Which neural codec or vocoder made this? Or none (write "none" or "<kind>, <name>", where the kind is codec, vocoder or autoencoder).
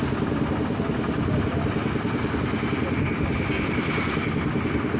none